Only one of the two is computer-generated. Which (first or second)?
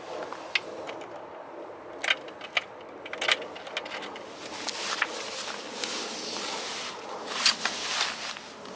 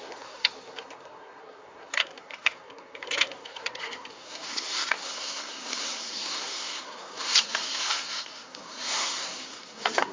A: second